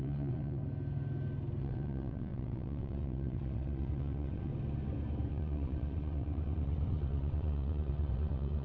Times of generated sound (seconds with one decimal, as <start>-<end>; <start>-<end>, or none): 0.0-0.6; 1.6-4.5; 5.3-8.6